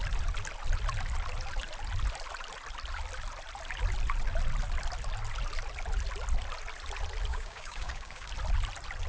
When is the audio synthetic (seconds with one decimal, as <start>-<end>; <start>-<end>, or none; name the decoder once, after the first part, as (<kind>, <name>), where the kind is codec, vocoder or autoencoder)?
7.3-8.3 (codec, DAC)